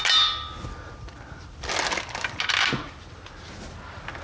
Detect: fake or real real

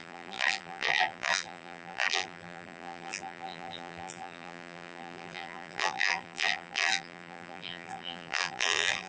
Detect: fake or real fake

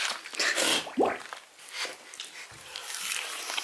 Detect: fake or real real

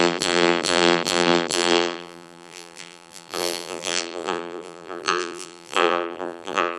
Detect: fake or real fake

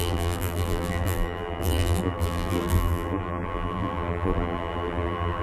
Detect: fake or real fake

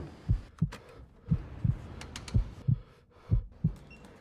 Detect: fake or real real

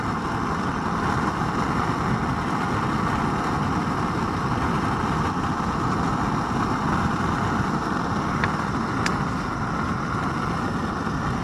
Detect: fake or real real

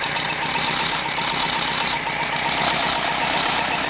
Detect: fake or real fake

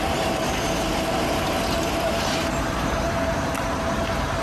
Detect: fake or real fake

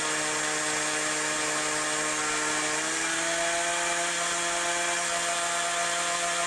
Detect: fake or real real